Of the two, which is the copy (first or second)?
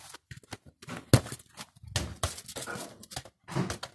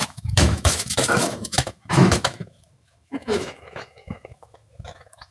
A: second